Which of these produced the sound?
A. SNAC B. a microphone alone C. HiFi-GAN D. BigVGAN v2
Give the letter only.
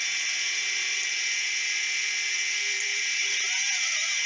D